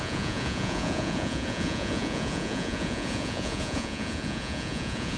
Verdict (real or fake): fake